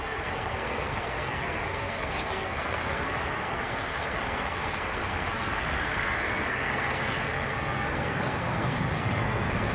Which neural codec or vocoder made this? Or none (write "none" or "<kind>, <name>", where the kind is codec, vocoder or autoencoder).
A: codec, SNAC